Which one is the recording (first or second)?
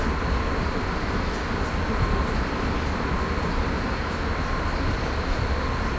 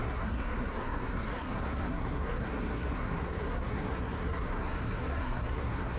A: first